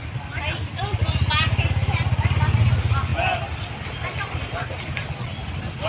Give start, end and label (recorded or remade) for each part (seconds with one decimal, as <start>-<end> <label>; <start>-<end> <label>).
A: 0.0-5.9 recorded